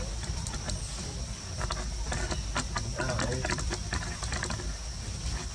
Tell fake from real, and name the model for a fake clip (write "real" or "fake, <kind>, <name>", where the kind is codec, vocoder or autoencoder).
real